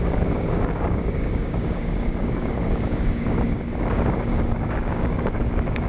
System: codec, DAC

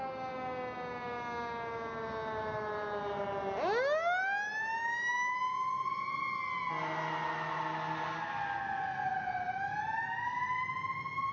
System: none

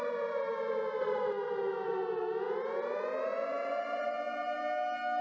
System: none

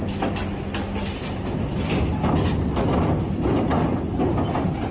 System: none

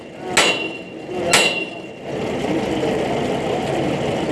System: none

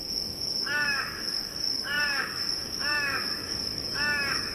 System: codec, DAC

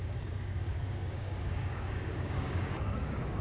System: codec, DAC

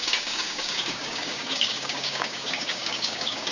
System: codec, DAC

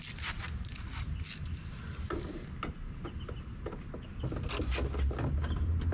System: none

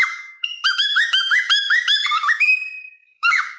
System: codec, DAC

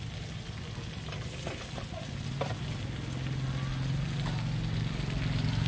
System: none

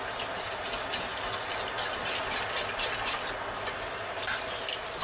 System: none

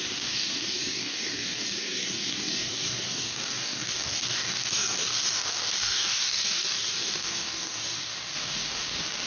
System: codec, DAC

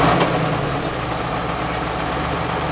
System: none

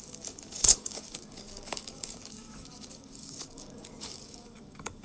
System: codec, DAC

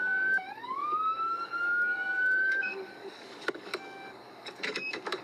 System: codec, DAC